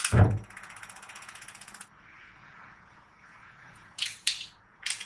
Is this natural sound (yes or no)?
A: no